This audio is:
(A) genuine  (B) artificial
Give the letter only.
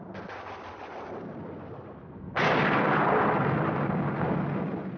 A